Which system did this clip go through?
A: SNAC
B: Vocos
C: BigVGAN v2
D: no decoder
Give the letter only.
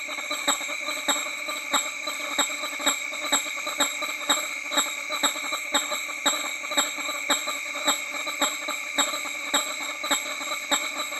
D